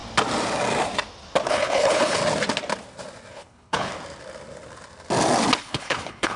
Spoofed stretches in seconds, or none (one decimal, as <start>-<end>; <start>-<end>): 1.5-2.2; 3.3-3.9; 5.6-6.4